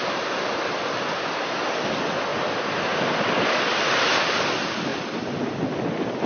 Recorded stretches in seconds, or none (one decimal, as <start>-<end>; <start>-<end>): 0.0-6.3